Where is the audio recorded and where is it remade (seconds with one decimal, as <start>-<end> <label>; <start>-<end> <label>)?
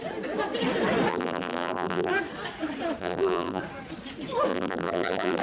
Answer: 0.0-1.1 recorded; 1.1-2.1 remade; 2.1-3.0 recorded; 3.0-3.6 remade; 3.6-4.5 recorded; 4.5-5.4 remade